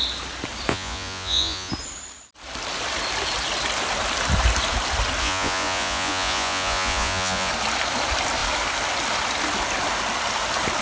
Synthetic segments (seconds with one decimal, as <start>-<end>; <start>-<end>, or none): 0.7-1.7; 5.2-7.5